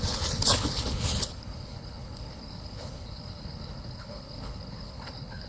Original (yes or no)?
no